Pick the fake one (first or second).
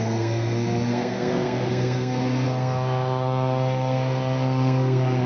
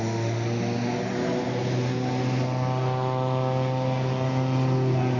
first